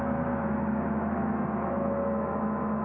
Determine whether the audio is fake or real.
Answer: fake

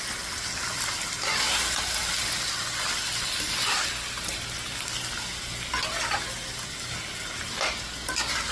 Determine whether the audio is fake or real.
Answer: real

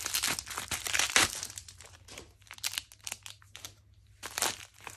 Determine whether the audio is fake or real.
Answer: real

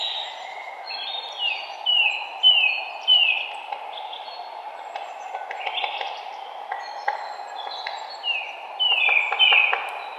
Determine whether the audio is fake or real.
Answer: real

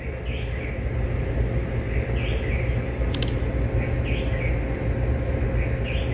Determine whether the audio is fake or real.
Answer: real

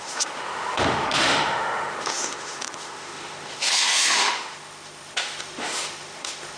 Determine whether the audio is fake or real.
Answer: fake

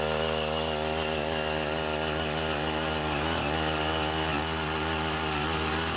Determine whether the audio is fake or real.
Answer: real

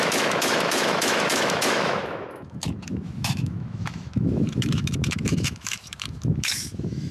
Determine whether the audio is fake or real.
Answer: fake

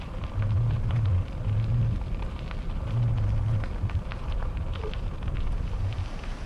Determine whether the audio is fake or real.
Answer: real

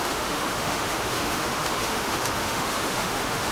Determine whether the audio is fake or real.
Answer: fake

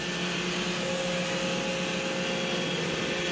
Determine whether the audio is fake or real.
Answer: real